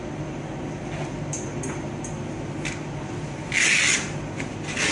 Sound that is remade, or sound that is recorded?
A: recorded